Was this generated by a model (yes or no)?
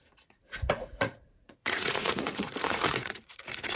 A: yes